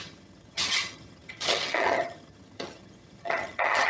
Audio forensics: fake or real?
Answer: fake